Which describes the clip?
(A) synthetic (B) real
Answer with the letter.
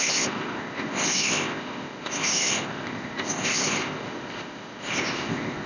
A